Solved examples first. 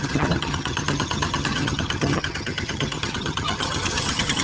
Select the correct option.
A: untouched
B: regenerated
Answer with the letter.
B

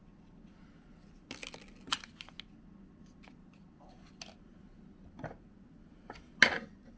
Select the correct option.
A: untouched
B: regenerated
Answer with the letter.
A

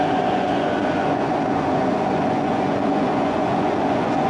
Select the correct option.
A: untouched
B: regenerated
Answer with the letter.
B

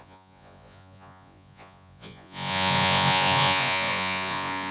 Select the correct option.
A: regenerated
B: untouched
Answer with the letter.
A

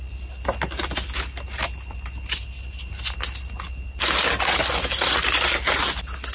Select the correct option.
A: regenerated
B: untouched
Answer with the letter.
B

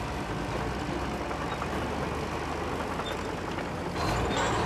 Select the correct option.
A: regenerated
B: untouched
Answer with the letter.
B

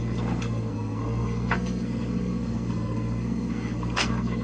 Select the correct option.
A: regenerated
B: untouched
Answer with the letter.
A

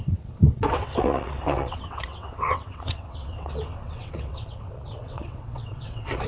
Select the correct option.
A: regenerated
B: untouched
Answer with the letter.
A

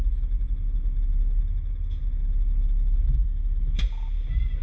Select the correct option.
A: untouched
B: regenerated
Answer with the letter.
A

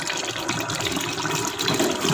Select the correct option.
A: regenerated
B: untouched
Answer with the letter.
B